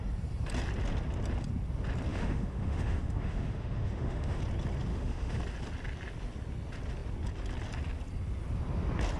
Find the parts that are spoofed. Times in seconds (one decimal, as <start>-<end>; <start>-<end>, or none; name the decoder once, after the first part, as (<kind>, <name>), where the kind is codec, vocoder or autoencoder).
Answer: 2.1-4.4 (autoencoder, DAC-VAE); 4.9-5.4